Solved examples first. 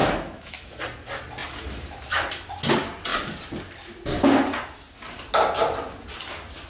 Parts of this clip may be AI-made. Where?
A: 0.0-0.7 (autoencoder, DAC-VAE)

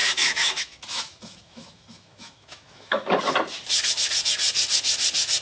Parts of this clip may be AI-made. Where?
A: 0.0-3.2 (autoencoder, DAC-VAE)

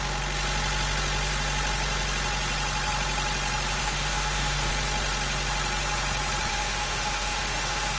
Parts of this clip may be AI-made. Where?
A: 3.8-4.7 (autoencoder, DAC-VAE); 6.5-8.0

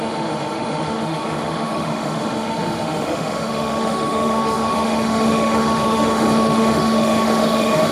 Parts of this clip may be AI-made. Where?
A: 0.0-7.9 (autoencoder, DAC-VAE)

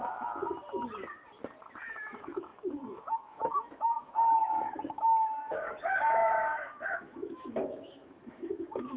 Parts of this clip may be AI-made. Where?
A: 0.0-0.6 (autoencoder, DAC-VAE); 1.8-9.0

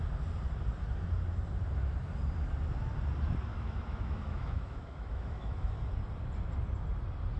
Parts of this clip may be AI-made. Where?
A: 3.5-5.7 (autoencoder, DAC-VAE)

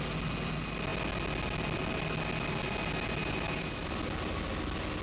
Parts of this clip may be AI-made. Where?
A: 3.2-3.9 (autoencoder, DAC-VAE)

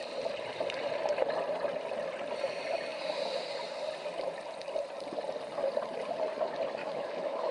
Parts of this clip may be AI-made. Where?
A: 6.8-7.5 (autoencoder, DAC-VAE)